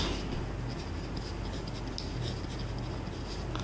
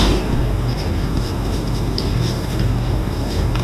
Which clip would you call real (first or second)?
first